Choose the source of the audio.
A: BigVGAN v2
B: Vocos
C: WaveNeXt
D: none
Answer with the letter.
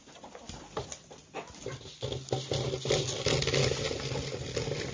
D